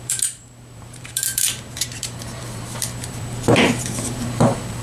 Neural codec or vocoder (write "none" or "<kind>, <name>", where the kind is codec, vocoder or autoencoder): vocoder, BigVGAN v2